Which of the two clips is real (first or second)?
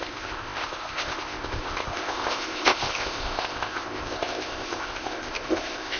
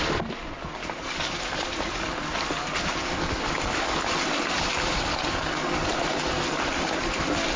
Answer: second